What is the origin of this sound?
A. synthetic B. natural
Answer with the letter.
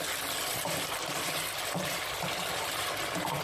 B